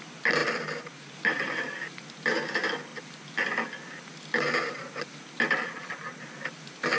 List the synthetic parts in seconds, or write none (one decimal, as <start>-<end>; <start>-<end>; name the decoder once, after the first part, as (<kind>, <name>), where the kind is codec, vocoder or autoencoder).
5.6-6.2 (vocoder, Vocos)